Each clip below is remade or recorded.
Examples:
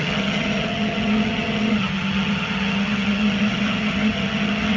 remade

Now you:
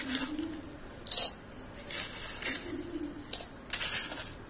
recorded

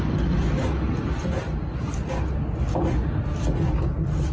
recorded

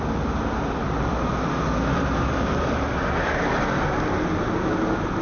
recorded